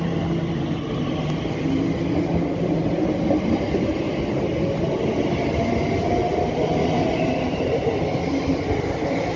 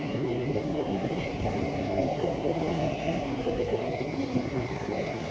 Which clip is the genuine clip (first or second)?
first